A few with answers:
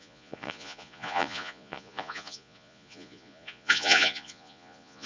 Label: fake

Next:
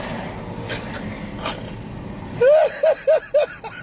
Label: real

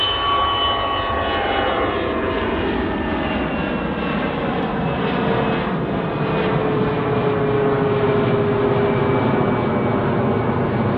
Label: real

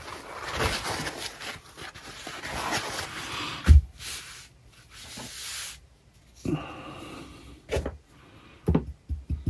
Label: real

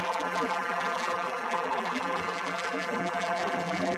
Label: fake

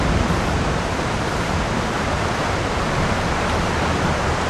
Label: fake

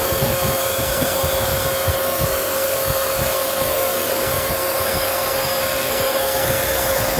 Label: fake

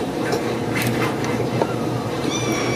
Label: fake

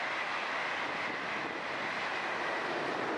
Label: real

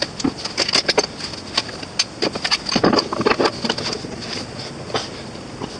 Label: real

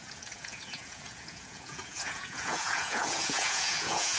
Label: fake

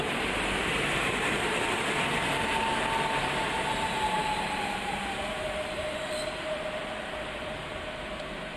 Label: fake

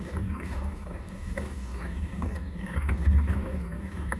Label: fake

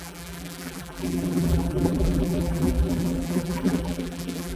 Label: fake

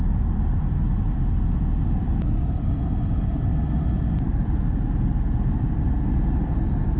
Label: fake